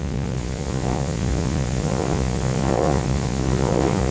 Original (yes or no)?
no